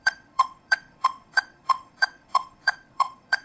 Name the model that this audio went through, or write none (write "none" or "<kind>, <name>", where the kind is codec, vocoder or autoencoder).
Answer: vocoder, WaveNeXt